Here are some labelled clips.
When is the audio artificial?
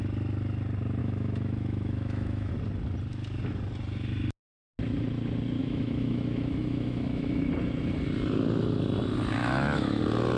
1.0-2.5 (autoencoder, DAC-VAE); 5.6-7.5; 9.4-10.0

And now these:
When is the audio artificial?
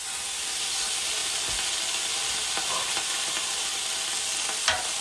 none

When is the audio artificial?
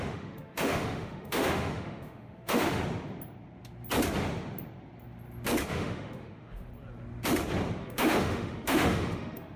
0.0-2.8 (autoencoder, DAC-VAE); 5.7-6.7; 7.8-9.6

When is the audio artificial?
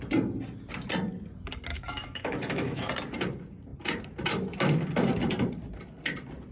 1.7-2.9 (autoencoder, DAC-VAE)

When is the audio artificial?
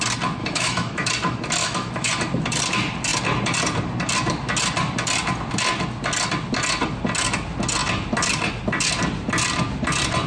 0.4-1.1 (autoencoder, DAC-VAE); 1.6-2.1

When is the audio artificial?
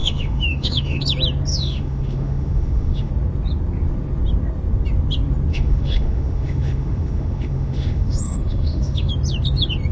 0.0-1.0 (autoencoder, DAC-VAE); 1.5-3.1; 5.5-9.1